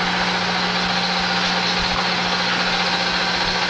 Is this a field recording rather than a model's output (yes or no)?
yes